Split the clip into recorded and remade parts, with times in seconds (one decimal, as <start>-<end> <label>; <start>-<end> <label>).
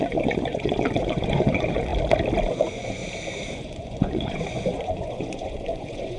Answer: 0.0-1.9 remade; 1.9-2.5 recorded; 2.5-3.0 remade; 3.0-3.5 recorded; 3.5-6.2 remade